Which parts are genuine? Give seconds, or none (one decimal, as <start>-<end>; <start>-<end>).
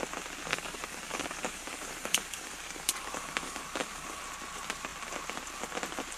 0.0-0.5; 4.2-6.2